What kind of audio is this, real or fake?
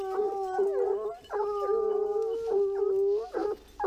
real